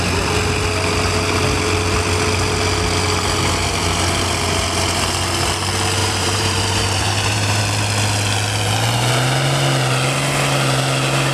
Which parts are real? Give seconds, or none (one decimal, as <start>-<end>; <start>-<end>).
0.0-6.0; 7.6-11.3